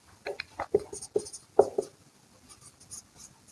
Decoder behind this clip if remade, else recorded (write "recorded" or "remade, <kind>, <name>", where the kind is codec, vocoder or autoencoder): recorded